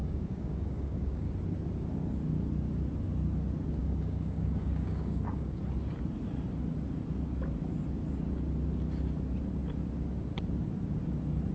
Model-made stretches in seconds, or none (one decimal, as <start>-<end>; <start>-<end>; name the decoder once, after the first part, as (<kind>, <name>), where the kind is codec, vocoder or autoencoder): 0.0-1.3 (codec, DAC); 3.8-5.6